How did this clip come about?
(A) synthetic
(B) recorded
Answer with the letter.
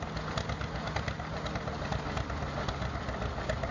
B